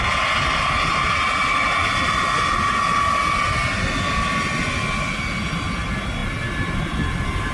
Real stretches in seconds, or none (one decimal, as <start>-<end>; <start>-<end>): 0.0-7.5